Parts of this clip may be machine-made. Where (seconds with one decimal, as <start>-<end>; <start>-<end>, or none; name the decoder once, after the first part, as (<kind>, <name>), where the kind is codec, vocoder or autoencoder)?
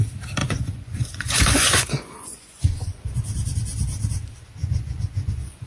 0.4-3.0 (vocoder, Vocos); 4.6-5.7